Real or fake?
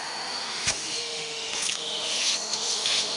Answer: fake